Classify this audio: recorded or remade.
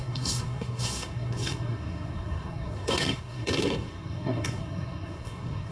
remade